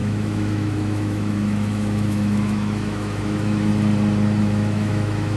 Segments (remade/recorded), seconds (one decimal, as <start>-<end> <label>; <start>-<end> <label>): 0.0-3.7 remade; 3.7-4.4 recorded; 4.4-5.4 remade